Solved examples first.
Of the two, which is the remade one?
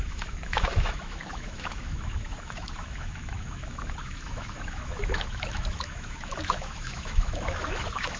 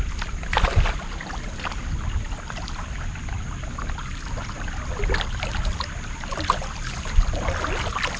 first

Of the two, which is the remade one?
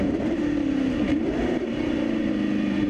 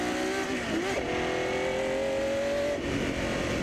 first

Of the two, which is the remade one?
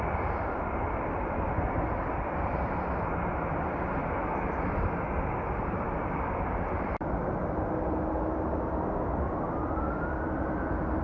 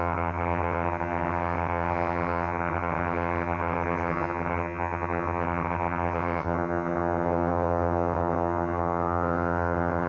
second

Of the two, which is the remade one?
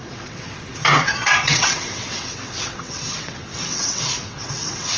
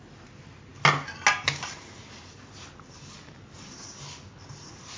first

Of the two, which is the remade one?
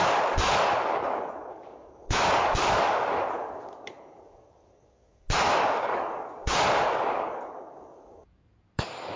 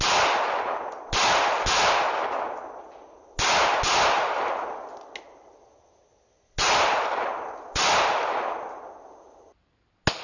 first